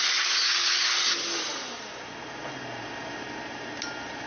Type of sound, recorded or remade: recorded